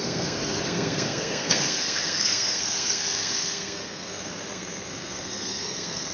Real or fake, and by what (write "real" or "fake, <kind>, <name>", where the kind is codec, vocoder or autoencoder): fake, codec, SNAC